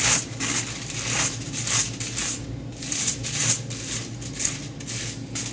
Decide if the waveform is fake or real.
real